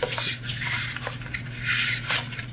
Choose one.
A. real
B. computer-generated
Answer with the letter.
A